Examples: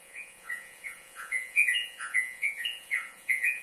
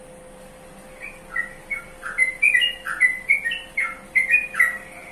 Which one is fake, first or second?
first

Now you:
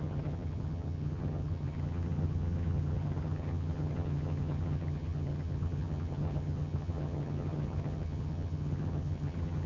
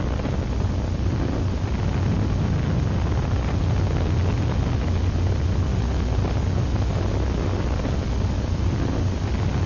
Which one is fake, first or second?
first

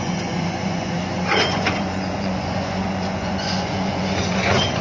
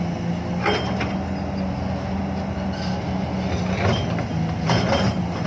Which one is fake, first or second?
first